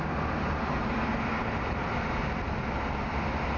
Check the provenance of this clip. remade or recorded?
recorded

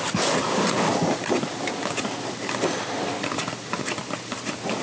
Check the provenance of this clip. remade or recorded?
recorded